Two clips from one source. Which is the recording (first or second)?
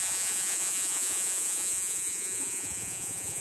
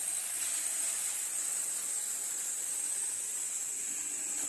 second